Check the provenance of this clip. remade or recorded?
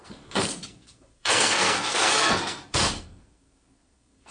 remade